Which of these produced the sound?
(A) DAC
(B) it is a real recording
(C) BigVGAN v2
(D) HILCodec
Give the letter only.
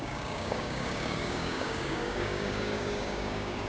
A